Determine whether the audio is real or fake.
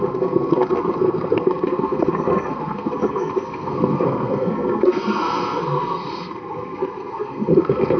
fake